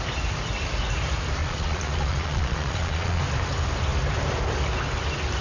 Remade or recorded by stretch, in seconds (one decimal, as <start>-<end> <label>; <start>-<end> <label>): 0.0-1.4 recorded; 1.4-3.2 remade; 3.2-5.4 recorded